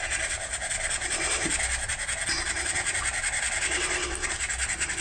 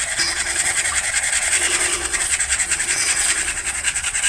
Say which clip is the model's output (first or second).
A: second